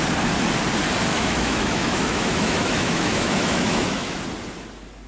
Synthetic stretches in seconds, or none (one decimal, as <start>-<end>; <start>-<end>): 1.1-4.2